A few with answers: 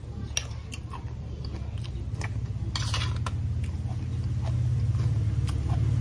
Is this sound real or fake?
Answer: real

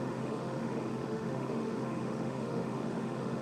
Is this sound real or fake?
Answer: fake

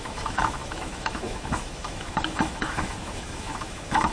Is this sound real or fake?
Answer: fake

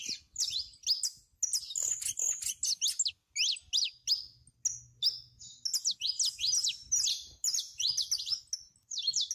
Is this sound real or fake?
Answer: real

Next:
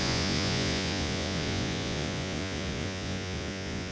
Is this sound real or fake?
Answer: fake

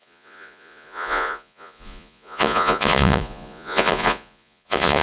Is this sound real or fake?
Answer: fake